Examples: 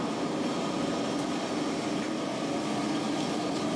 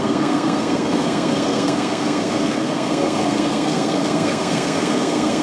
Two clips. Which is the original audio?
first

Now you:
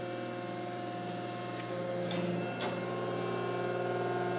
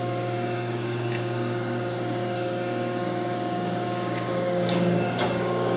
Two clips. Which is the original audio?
first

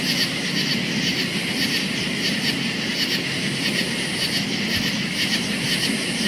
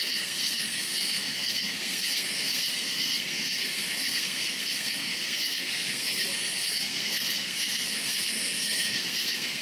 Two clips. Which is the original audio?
first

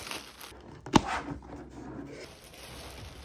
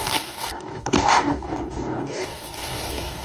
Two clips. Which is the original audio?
first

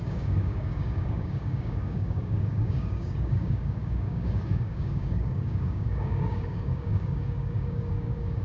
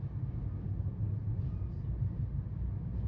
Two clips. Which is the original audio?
second